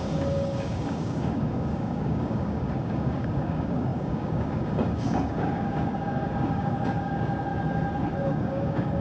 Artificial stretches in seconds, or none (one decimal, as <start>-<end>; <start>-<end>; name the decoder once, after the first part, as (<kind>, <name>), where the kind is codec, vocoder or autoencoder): 0.0-7.5 (codec, DAC); 8.4-9.0